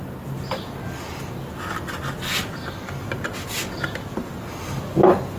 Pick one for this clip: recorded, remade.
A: recorded